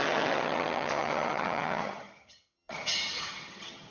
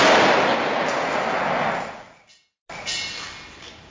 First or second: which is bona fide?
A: second